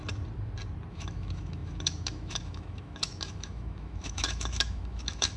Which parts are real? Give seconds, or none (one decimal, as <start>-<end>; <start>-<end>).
0.0-0.9